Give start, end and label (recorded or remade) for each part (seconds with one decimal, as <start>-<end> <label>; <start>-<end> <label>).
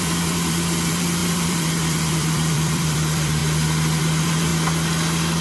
0.0-3.4 remade; 3.4-4.0 recorded; 4.0-4.5 remade; 4.5-5.4 recorded